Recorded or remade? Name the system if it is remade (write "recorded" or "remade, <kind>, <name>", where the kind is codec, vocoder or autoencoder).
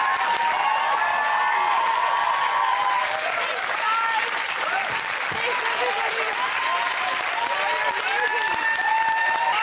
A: recorded